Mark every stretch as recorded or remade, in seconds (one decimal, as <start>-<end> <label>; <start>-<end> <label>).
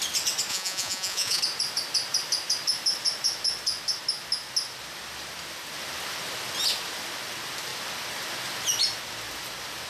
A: 0.0-0.5 recorded; 0.5-1.4 remade; 1.4-9.9 recorded